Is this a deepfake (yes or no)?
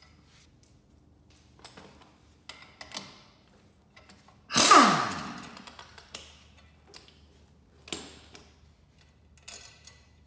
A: no